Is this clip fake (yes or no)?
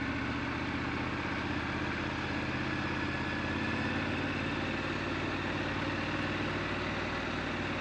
no